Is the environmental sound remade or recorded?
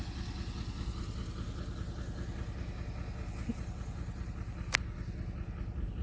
recorded